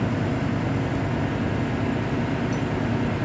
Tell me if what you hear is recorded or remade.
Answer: recorded